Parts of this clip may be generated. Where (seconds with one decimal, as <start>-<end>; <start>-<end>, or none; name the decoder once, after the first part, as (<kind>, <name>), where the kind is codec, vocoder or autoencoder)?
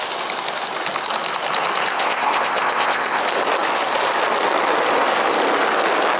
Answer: 1.9-3.2 (codec, ZipCodec)